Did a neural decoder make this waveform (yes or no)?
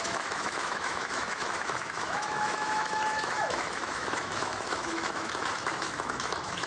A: yes